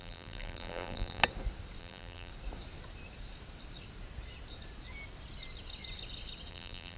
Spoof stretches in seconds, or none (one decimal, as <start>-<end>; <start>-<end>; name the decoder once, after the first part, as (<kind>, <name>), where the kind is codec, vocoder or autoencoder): 0.0-1.2 (vocoder, BigVGAN v2); 1.8-2.3; 6.5-7.0